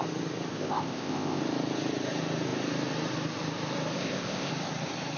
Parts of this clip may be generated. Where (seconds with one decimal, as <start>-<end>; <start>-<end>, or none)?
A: 0.5-1.4; 4.0-4.5